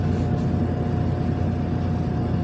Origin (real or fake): real